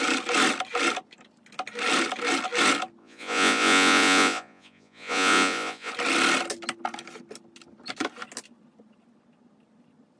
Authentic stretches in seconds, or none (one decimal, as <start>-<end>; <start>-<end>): 0.0-3.0; 5.9-10.2